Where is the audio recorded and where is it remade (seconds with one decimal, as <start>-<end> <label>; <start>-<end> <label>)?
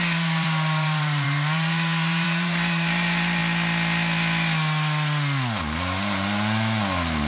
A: 0.0-3.4 remade; 3.4-7.3 recorded